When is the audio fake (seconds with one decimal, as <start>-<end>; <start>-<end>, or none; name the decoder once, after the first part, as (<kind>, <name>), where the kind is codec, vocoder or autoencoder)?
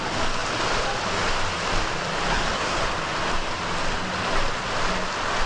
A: 2.3-2.8 (codec, SNAC)